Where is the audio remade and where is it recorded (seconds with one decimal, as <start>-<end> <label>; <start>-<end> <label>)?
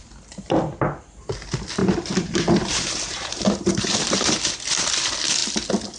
0.0-1.8 recorded; 1.8-4.4 remade; 4.4-6.0 recorded